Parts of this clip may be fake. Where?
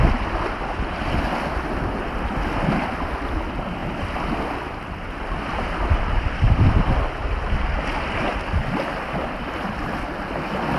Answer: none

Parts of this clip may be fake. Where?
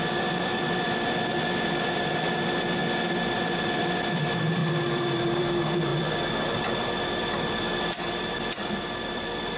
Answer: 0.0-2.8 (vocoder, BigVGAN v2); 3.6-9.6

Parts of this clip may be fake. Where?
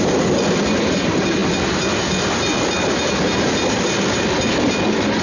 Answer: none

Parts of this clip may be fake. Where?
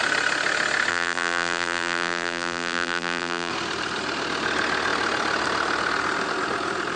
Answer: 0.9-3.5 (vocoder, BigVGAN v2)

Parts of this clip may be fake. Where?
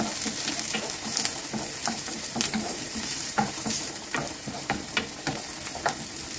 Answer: 1.8-4.9 (vocoder, BigVGAN v2)